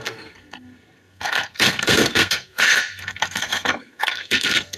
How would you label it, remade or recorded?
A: remade